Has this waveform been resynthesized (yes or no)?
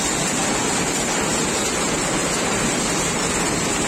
no